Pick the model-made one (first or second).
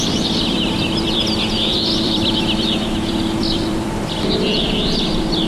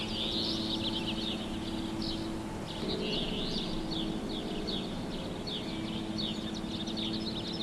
first